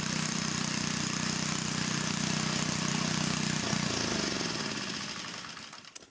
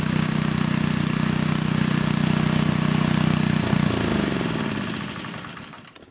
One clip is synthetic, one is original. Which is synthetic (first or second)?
first